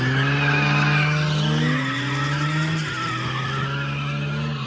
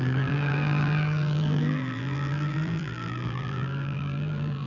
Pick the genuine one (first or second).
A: first